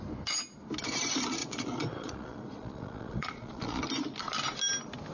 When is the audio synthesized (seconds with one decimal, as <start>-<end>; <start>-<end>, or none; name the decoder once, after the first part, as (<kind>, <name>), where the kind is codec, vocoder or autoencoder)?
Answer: 1.4-3.8 (vocoder, Vocos)